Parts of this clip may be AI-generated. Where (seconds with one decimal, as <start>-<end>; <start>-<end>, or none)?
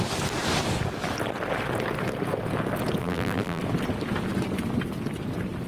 3.0-3.6